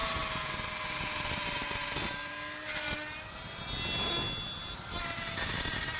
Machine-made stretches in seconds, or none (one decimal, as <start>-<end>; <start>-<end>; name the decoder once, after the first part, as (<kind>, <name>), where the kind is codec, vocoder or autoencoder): none